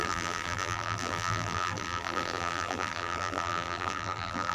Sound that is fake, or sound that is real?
fake